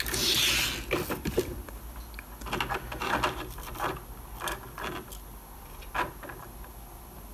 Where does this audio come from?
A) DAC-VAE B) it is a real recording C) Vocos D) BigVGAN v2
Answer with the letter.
B